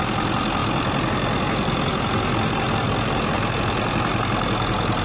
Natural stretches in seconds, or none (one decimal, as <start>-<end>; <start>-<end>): 0.0-5.0